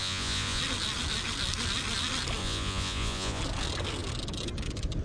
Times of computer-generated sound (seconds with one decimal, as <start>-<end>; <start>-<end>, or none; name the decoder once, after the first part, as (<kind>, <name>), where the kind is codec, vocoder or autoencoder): 0.0-0.6 (vocoder, Vocos); 2.4-3.4